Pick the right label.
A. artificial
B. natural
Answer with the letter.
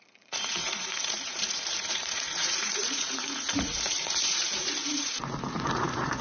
A